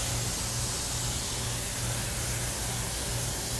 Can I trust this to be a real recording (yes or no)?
yes